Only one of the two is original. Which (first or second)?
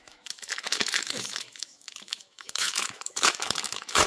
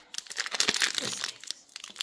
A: second